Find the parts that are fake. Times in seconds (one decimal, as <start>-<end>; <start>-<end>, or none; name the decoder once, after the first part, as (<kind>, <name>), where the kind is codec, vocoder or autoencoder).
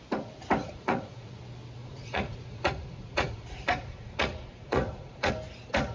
0.6-1.4 (vocoder, Vocos); 1.8-5.3